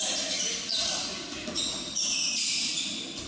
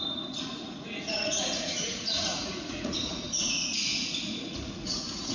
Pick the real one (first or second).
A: first